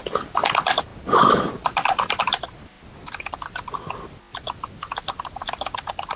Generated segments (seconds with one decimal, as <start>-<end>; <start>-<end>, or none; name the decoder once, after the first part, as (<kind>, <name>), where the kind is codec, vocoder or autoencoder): none